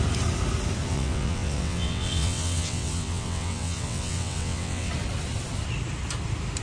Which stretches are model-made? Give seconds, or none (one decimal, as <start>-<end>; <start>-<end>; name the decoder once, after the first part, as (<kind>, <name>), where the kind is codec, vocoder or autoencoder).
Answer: 0.9-4.9 (vocoder, WaveNeXt)